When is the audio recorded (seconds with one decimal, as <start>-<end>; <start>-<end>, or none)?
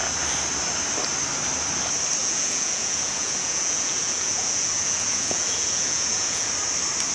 0.0-2.2; 6.5-7.1